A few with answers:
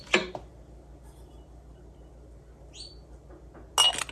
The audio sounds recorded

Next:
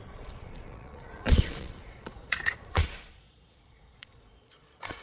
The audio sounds remade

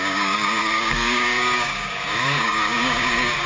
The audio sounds remade